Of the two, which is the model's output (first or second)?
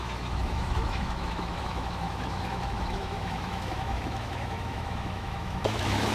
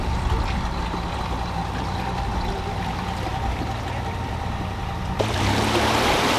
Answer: first